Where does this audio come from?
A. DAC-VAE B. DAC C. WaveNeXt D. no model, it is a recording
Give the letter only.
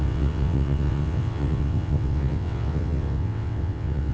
C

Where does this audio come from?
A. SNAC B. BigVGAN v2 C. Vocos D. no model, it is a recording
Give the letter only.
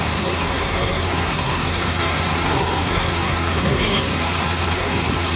A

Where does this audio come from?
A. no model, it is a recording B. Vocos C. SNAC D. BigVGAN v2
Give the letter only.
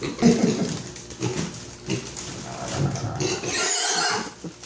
A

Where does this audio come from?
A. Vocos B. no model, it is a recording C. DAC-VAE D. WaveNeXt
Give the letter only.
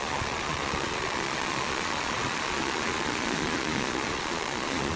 A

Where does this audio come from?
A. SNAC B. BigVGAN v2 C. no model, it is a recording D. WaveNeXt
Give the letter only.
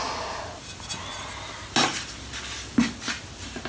C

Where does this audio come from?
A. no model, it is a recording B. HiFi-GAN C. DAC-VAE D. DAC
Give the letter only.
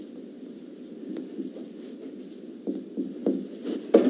A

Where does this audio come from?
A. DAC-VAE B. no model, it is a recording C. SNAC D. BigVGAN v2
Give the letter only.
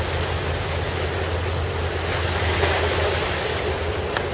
B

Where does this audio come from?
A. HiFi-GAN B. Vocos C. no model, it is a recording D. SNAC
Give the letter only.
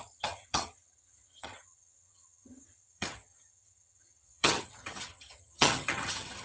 A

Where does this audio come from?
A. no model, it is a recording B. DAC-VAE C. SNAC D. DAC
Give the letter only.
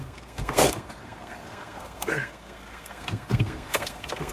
C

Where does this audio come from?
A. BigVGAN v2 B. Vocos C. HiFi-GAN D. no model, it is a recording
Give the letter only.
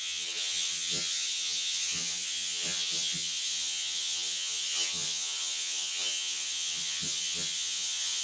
C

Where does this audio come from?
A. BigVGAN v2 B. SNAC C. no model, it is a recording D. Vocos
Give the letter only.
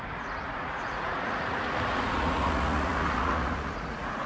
D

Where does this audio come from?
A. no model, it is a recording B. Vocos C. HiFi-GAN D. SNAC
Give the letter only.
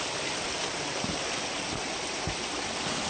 A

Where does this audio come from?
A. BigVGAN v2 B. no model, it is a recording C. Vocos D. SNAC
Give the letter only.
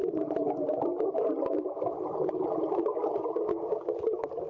B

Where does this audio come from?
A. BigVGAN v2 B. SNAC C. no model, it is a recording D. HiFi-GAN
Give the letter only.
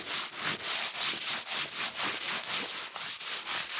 C